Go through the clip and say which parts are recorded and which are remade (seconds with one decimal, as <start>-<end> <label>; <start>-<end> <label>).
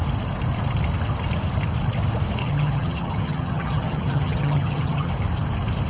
0.0-2.4 recorded; 2.4-5.1 remade; 5.1-5.9 recorded